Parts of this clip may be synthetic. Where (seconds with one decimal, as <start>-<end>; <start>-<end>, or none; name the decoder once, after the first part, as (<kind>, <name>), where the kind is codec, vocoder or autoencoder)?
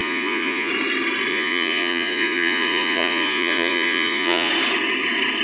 0.0-0.7 (vocoder, Vocos); 1.3-4.5